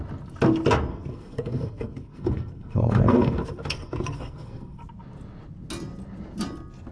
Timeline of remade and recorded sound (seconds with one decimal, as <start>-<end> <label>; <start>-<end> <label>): 0.0-0.9 recorded; 0.9-4.8 remade; 4.8-6.9 recorded